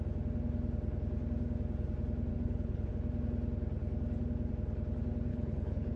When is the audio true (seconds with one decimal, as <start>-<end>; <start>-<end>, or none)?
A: 0.0-2.3; 2.9-5.3